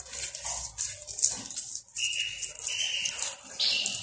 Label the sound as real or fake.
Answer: real